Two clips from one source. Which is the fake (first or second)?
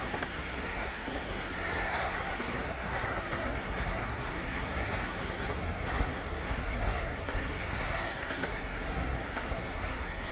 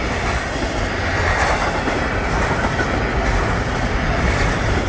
first